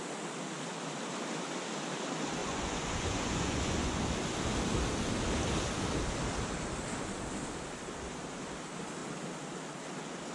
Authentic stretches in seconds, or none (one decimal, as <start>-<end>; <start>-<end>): 0.0-2.4; 4.0-10.3